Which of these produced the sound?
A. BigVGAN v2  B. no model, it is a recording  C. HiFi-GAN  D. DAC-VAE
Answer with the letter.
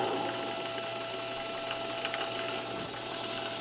B